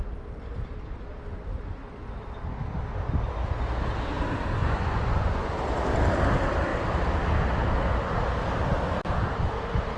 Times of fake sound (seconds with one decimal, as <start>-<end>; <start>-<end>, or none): 4.6-5.5